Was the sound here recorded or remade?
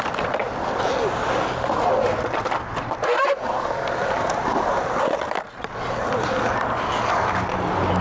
recorded